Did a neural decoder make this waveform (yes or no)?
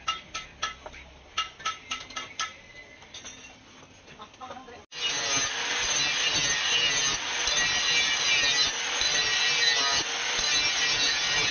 no